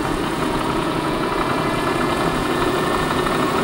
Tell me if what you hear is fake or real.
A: fake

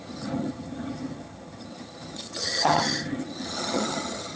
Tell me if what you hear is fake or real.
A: fake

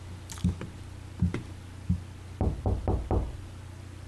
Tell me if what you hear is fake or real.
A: real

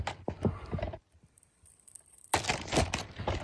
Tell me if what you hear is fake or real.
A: fake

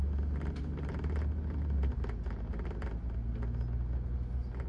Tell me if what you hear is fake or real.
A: real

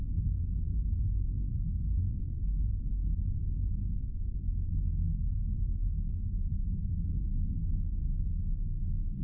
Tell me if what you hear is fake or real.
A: fake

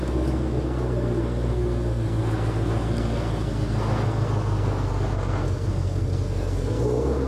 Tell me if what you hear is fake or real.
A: fake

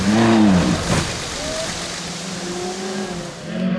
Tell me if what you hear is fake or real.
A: real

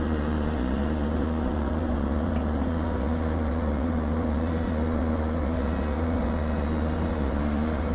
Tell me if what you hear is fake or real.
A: fake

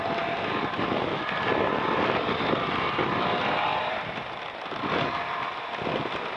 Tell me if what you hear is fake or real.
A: real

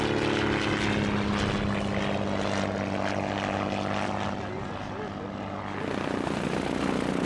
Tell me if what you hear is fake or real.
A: real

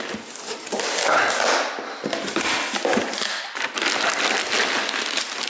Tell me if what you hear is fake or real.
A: real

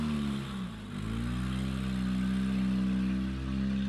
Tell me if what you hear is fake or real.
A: real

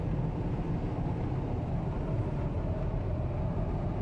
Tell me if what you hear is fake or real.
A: real